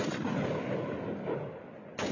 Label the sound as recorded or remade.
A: recorded